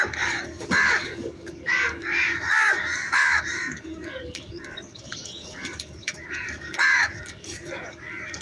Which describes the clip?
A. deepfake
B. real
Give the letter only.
A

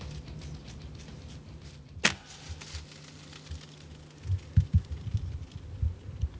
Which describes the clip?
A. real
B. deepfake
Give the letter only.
A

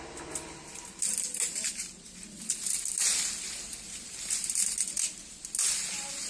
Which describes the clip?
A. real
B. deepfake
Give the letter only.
A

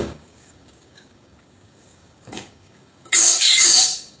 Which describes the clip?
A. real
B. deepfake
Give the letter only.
B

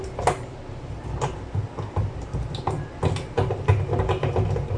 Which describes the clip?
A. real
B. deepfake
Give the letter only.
A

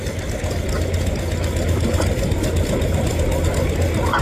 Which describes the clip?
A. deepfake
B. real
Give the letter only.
B